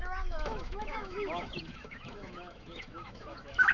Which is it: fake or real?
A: fake